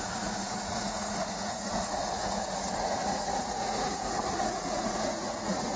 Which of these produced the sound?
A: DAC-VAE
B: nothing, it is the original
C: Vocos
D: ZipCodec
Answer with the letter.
C